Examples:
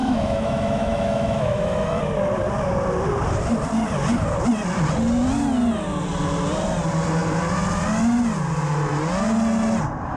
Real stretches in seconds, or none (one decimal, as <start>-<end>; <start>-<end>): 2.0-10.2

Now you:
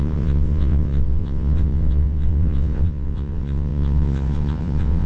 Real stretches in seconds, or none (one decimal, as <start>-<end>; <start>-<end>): none

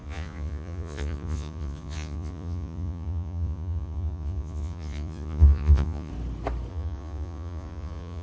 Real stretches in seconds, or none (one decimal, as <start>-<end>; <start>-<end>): 6.1-6.7

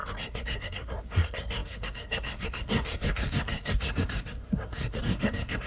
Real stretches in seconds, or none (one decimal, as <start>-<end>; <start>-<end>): none

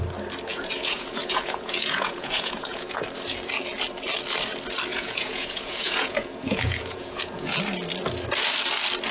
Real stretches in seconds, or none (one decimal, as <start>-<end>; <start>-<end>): 0.0-0.5; 3.0-4.9; 7.6-9.1

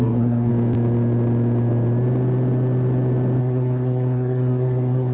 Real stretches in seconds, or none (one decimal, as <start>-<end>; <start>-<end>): 0.5-3.4

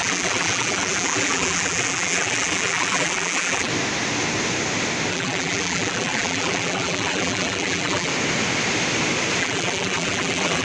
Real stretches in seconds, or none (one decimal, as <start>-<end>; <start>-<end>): 3.7-5.1; 8.1-9.4